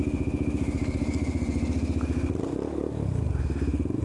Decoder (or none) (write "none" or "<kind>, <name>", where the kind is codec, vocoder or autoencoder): none